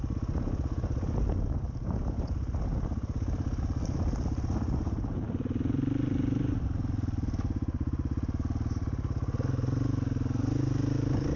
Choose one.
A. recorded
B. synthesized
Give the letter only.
A